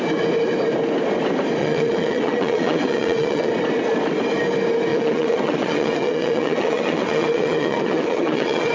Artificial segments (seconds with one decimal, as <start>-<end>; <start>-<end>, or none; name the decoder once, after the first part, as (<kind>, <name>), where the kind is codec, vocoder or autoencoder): 1.6-3.5 (vocoder, WaveNeXt); 4.9-8.7